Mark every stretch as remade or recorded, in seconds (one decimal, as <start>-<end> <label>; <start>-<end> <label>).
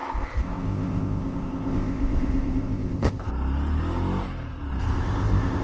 0.0-3.3 remade; 3.3-4.8 recorded; 4.8-5.6 remade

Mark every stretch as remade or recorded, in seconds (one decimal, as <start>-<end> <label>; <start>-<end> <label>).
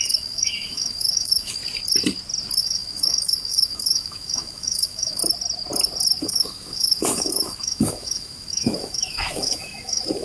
0.0-1.6 remade; 1.6-2.6 recorded; 2.6-5.2 remade; 5.2-6.2 recorded; 6.2-10.2 remade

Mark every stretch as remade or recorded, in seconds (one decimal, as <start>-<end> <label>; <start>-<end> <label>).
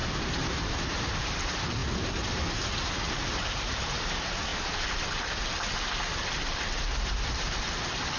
0.0-4.5 remade; 4.5-7.0 recorded; 7.0-8.2 remade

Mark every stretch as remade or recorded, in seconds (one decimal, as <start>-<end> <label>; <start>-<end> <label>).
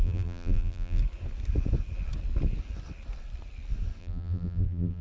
0.0-1.0 remade; 1.0-4.0 recorded; 4.0-5.0 remade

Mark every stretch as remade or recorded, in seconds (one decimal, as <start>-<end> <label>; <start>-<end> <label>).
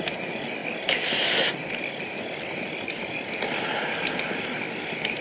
0.0-5.2 recorded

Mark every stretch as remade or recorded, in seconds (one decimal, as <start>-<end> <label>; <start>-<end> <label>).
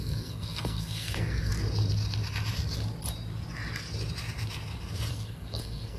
0.0-1.5 remade; 1.5-5.1 recorded; 5.1-6.0 remade